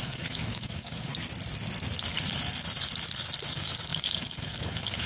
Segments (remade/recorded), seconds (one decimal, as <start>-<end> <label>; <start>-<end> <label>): 0.0-1.1 remade; 1.1-3.5 recorded; 3.5-5.1 remade